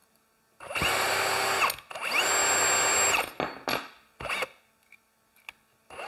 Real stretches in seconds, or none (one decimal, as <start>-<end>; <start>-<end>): 0.0-6.1